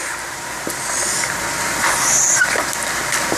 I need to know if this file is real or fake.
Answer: real